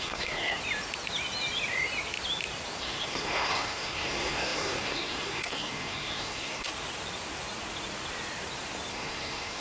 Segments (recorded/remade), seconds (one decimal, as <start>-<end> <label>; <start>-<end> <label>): 0.0-0.6 remade; 0.6-2.8 recorded; 2.8-6.7 remade; 6.7-8.9 recorded; 8.9-9.6 remade